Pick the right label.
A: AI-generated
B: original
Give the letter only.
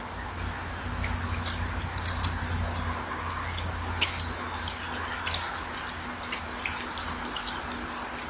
B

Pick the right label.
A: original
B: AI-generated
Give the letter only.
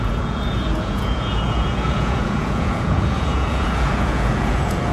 B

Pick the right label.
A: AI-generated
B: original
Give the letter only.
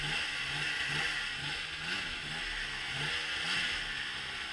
B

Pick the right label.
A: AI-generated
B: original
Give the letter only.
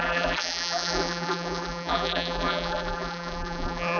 A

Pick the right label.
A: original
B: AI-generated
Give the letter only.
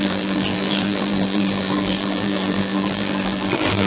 B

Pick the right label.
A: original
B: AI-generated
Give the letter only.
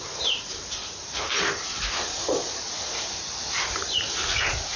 B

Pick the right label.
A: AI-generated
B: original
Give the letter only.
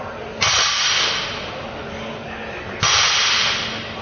B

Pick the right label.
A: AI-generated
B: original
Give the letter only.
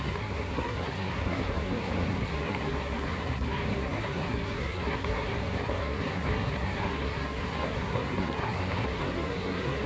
A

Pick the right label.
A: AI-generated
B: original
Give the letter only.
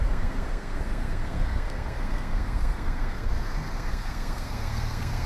A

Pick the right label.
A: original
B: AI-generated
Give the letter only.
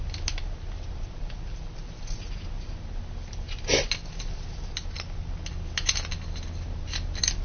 A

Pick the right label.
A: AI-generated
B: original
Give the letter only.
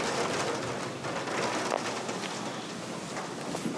B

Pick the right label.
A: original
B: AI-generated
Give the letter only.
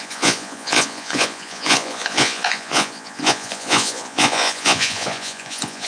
B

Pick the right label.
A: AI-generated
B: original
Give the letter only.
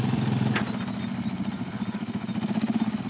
B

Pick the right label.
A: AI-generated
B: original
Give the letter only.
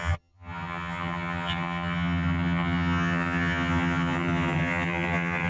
A